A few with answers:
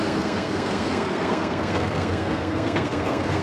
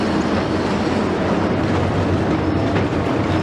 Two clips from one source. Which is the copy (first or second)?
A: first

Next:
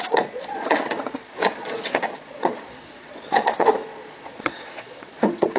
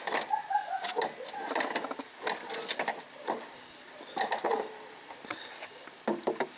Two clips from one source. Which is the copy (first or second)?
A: first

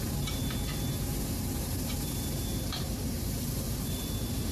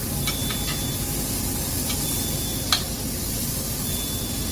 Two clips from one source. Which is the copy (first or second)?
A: first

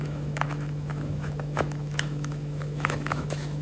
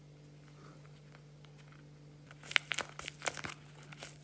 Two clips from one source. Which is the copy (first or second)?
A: first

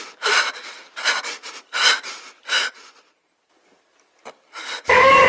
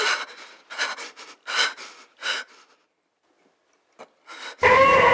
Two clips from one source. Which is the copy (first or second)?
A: first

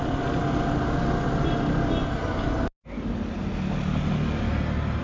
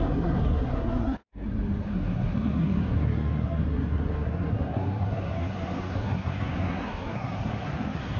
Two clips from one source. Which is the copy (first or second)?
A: second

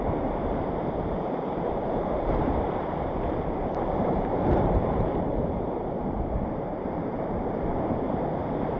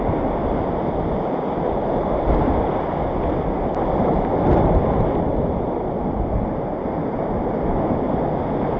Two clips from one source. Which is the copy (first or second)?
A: first